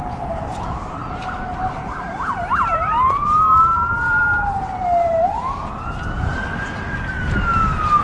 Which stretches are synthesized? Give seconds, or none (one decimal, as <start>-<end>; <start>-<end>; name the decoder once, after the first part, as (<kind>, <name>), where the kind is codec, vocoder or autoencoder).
1.0-5.4 (vocoder, BigVGAN v2)